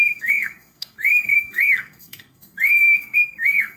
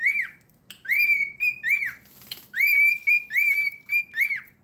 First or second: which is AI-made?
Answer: first